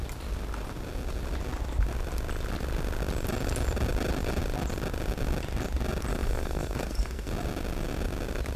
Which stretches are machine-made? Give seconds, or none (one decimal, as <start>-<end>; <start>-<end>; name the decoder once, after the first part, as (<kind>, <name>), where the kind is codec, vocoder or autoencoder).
6.1-7.3 (codec, SNAC)